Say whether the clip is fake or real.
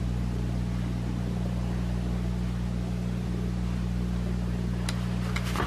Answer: real